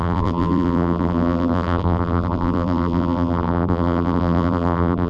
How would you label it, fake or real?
fake